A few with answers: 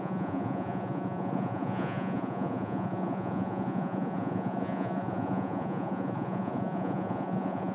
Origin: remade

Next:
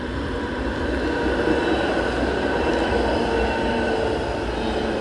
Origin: recorded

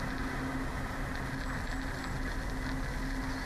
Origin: recorded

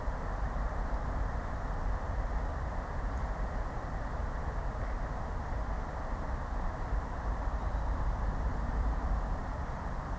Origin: remade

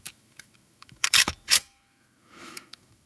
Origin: remade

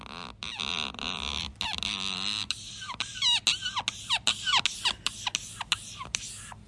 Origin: recorded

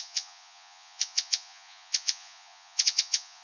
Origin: remade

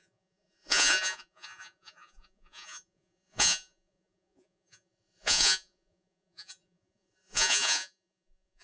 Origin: remade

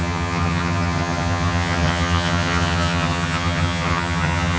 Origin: remade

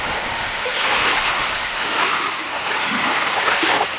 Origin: remade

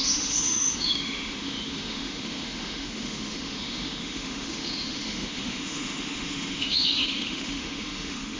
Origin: remade